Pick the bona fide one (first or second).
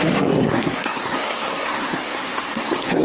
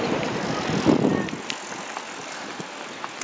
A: second